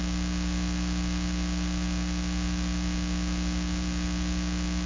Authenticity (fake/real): real